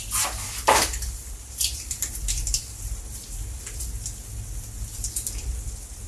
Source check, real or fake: fake